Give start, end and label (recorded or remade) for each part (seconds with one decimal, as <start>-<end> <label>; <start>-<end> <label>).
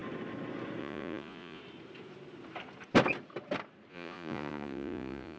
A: 0.0-0.8 recorded; 0.8-1.6 remade; 1.6-3.9 recorded; 3.9-5.4 remade